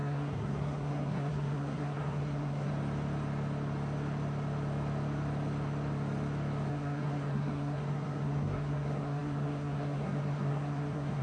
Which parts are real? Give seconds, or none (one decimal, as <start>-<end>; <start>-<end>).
2.7-6.7